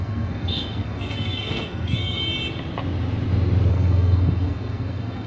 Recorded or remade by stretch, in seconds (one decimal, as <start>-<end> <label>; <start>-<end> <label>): 0.0-2.2 remade; 2.2-3.7 recorded; 3.7-5.3 remade